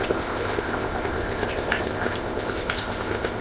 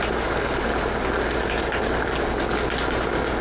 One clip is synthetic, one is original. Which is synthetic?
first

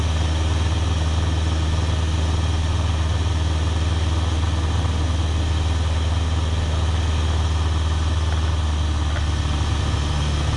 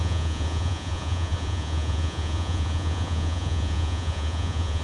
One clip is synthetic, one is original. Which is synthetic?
second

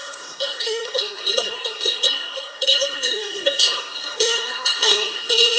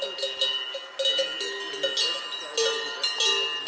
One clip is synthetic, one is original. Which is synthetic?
first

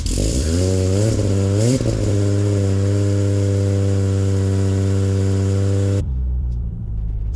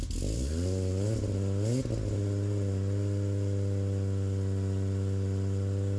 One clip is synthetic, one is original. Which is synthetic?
first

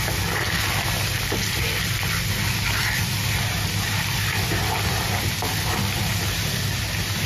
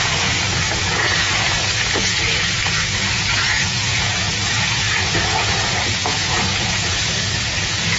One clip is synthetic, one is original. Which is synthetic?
second